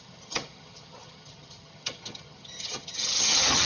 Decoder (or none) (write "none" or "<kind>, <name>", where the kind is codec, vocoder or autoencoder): vocoder, HiFi-GAN